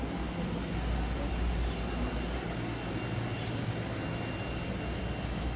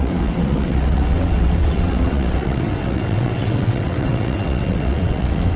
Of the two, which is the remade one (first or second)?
second